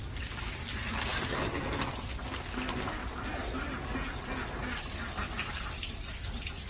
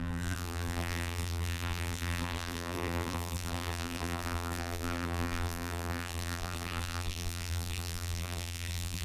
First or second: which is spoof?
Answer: second